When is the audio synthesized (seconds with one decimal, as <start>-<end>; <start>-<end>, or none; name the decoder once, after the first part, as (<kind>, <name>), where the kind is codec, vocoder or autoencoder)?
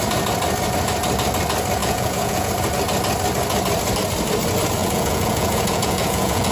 1.8-2.5 (vocoder, Vocos); 4.8-6.5